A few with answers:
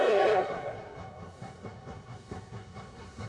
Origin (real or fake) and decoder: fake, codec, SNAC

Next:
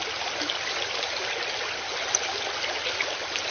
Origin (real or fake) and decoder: real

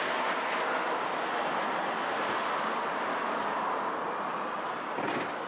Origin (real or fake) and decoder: real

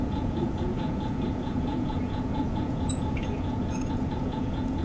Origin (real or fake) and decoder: fake, vocoder, Vocos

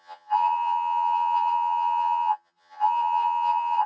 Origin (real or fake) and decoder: fake, vocoder, HiFi-GAN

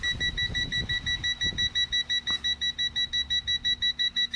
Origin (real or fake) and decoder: real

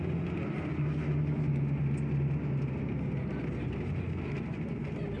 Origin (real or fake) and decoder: real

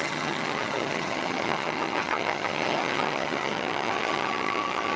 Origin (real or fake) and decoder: fake, vocoder, HiFi-GAN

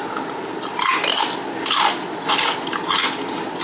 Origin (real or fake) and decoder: real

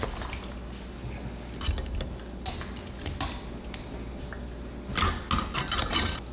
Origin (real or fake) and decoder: real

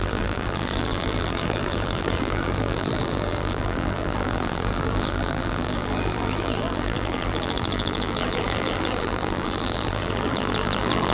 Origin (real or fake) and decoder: fake, vocoder, BigVGAN v2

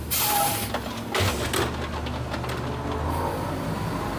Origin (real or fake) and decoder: real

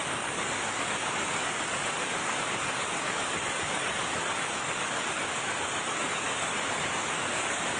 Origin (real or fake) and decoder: fake, codec, DAC